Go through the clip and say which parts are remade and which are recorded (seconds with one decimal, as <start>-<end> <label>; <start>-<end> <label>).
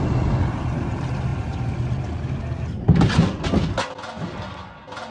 0.0-5.1 recorded